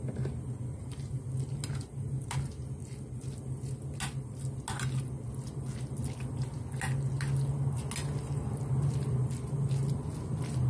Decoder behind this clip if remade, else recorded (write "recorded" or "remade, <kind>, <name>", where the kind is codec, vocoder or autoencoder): recorded